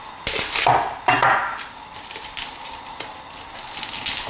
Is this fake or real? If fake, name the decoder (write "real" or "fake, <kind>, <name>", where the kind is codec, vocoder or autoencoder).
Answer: real